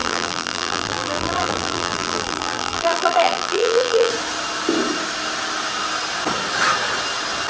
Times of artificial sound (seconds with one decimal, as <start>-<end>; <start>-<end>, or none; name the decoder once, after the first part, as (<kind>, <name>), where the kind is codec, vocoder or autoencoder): 0.0-4.1 (vocoder, BigVGAN v2)